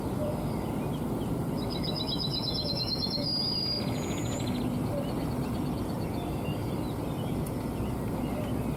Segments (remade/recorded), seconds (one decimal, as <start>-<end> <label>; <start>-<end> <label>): 0.0-2.3 recorded; 2.3-4.6 remade; 4.6-8.8 recorded